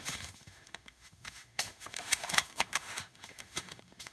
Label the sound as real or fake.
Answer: fake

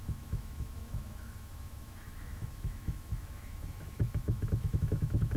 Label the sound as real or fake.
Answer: fake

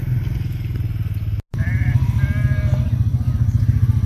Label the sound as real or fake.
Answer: real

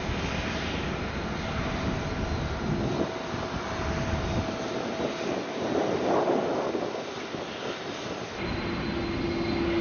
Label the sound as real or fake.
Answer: real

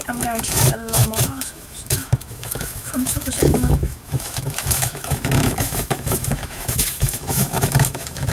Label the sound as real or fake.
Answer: fake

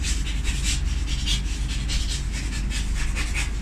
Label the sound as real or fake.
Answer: real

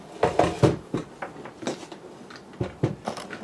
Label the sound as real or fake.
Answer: real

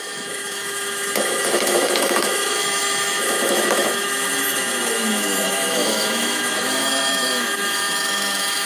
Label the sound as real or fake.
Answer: fake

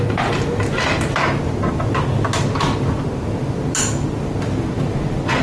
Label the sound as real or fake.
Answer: real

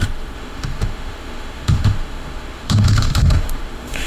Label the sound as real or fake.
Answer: fake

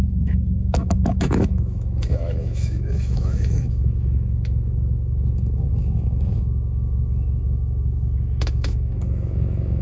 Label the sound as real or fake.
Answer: fake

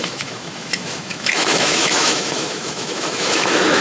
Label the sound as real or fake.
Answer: fake